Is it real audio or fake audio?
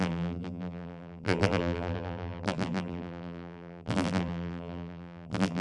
fake